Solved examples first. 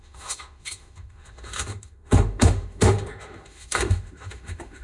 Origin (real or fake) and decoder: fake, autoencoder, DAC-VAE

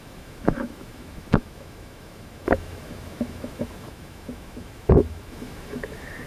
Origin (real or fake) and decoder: fake, autoencoder, DAC-VAE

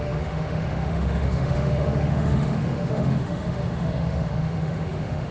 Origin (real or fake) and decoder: fake, autoencoder, DAC-VAE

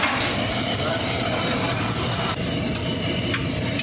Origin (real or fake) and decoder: real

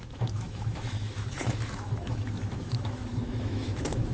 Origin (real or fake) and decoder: fake, autoencoder, DAC-VAE